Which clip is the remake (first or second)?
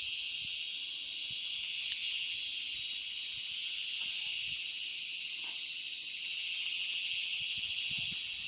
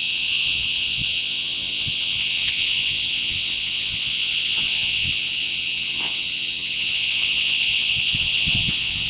second